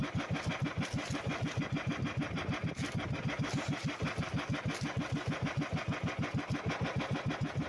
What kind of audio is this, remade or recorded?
recorded